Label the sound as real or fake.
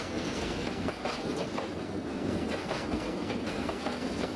fake